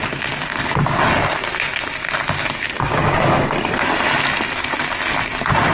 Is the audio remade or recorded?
recorded